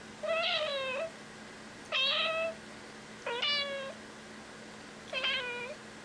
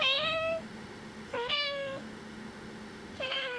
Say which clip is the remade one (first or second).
second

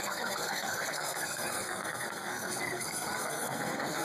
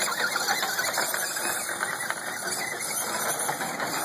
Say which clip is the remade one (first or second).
first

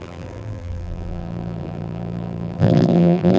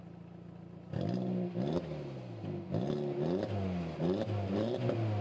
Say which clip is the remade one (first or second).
first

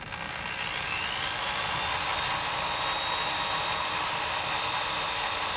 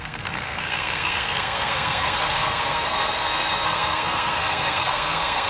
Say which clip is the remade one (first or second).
second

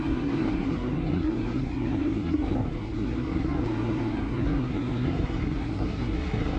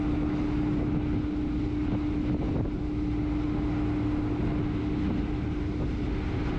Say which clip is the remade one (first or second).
first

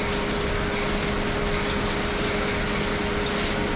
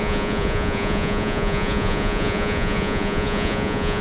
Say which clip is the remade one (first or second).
second